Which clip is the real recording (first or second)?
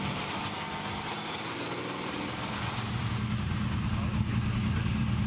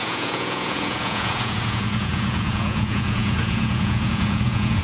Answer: first